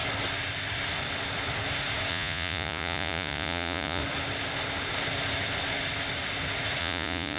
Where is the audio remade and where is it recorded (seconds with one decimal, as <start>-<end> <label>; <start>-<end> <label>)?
0.0-2.1 recorded; 2.1-4.0 remade; 4.0-6.8 recorded; 6.8-7.4 remade

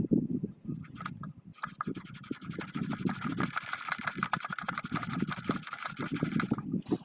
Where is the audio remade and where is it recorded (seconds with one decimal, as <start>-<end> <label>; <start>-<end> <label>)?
0.0-7.0 recorded

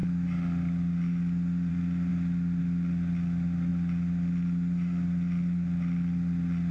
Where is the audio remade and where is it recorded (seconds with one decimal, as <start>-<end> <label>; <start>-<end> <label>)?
0.0-6.7 recorded

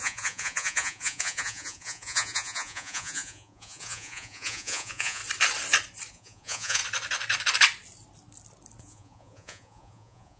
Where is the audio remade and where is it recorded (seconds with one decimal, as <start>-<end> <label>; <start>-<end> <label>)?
0.0-5.2 remade; 5.2-6.1 recorded; 6.1-6.8 remade; 6.8-8.8 recorded; 8.8-10.4 remade